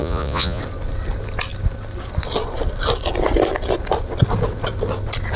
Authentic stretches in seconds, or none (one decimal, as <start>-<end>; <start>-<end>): 0.6-5.4